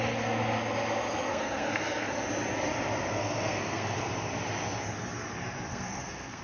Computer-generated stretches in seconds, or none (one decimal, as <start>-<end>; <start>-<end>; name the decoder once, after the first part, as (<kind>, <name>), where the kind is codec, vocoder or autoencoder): 1.3-2.1 (codec, SNAC); 3.1-4.1; 5.7-6.4